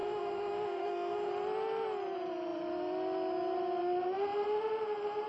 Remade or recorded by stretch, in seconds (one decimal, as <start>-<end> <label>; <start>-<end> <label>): 0.0-1.3 remade; 1.3-5.3 recorded